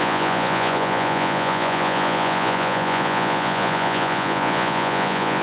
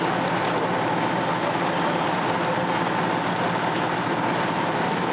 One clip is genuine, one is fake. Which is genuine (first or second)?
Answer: second